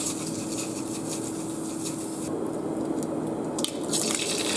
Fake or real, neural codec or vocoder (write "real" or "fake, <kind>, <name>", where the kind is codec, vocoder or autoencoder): real